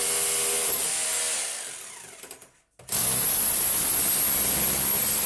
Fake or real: real